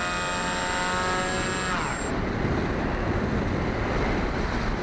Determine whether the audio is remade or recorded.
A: recorded